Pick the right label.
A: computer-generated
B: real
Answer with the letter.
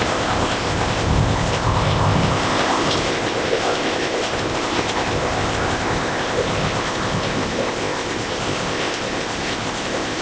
A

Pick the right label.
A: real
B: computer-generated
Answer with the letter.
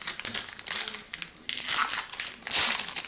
A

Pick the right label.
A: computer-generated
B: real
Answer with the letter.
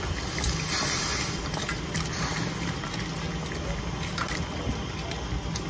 B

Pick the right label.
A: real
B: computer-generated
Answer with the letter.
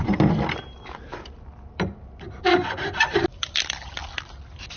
A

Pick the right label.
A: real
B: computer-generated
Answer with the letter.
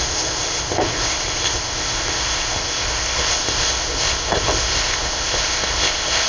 B